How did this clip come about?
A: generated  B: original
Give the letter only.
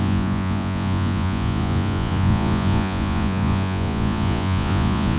A